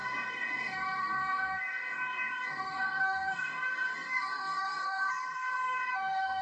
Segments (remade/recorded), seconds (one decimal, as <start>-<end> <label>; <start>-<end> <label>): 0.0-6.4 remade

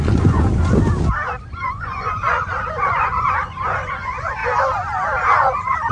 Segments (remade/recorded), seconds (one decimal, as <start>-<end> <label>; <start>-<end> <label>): 0.0-0.8 remade; 0.8-1.5 recorded; 1.5-4.4 remade; 4.4-5.4 recorded; 5.4-5.9 remade

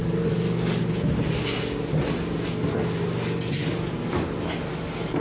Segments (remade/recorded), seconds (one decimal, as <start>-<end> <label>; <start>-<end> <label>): 0.0-0.8 remade; 0.8-5.2 recorded